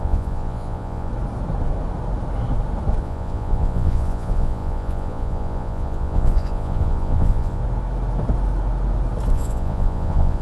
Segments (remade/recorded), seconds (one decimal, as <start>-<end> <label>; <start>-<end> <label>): 0.0-1.1 remade; 1.1-3.0 recorded; 3.0-7.6 remade; 7.6-9.3 recorded; 9.3-10.4 remade